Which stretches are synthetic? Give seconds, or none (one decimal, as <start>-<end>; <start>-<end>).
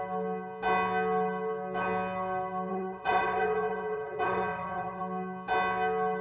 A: 2.7-5.0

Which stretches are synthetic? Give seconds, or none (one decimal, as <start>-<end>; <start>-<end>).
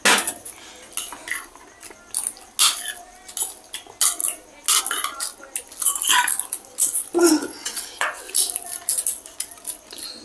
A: 7.2-8.3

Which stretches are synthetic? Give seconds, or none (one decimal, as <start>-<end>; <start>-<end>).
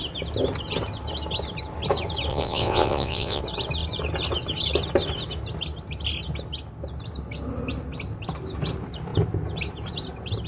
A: 2.3-3.4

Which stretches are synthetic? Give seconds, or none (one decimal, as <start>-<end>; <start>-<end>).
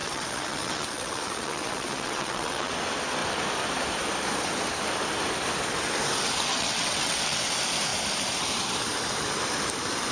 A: 0.0-2.7; 6.5-7.5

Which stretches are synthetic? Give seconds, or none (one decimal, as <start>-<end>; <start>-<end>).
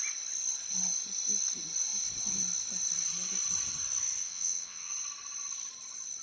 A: 4.2-4.9